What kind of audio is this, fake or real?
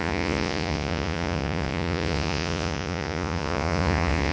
fake